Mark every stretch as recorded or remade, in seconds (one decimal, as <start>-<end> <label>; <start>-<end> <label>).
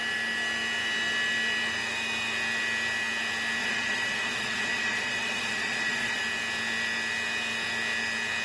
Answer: 0.0-3.6 recorded; 3.6-6.2 remade; 6.2-8.4 recorded